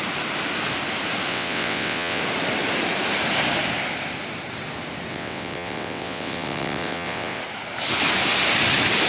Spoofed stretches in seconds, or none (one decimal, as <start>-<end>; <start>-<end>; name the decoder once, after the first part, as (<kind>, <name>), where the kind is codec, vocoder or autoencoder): 1.3-2.2 (vocoder, WaveNeXt); 5.1-7.4